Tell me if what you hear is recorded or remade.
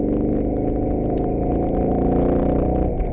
recorded